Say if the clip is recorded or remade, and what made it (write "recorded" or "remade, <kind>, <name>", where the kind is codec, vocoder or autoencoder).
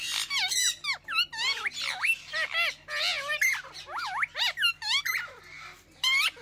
recorded